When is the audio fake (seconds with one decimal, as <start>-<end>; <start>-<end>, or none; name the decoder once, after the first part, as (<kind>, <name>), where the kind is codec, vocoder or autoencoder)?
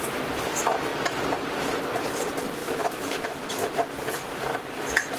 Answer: 2.6-3.5 (autoencoder, DAC-VAE)